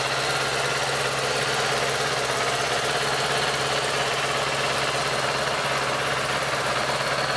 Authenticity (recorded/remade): recorded